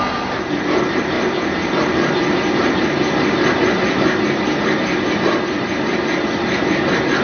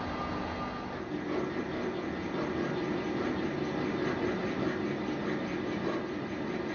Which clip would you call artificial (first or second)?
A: first